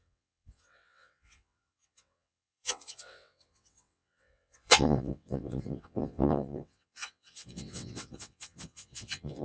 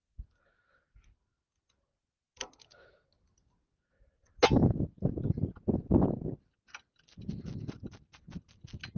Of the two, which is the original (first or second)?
second